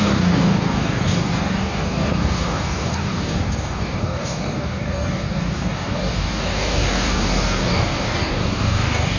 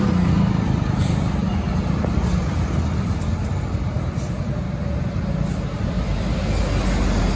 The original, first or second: second